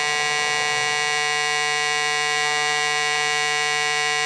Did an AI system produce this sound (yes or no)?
no